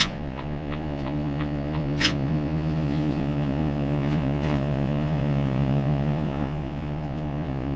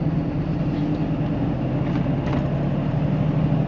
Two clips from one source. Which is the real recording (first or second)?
second